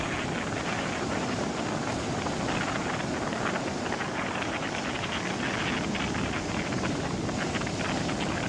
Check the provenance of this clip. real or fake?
real